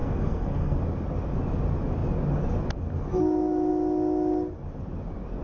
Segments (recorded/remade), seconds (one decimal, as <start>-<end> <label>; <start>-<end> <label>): 0.0-0.8 remade; 0.8-5.4 recorded

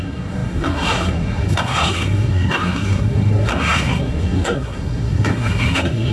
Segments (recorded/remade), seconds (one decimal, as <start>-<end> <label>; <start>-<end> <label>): 0.0-6.1 remade

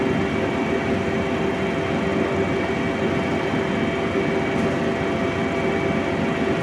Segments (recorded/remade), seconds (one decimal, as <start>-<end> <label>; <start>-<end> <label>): 0.0-6.6 recorded

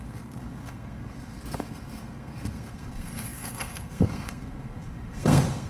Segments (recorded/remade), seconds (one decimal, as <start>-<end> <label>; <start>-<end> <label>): 0.0-5.7 remade

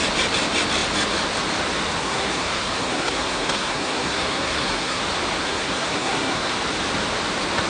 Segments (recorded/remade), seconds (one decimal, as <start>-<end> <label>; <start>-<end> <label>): 0.0-2.0 recorded; 2.0-5.0 remade; 5.0-5.4 recorded; 5.4-6.5 remade; 6.5-7.7 recorded